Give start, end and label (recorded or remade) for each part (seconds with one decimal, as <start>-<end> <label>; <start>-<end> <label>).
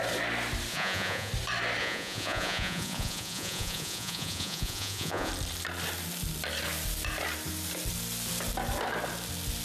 0.0-0.7 recorded; 0.7-1.3 remade; 1.3-1.8 recorded; 1.8-5.3 remade; 5.3-9.6 recorded